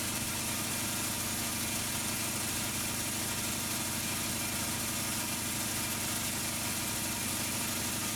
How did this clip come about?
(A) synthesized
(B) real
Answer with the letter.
B